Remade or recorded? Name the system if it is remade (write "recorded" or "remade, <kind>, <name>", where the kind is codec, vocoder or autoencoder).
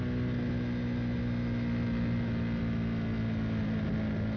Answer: recorded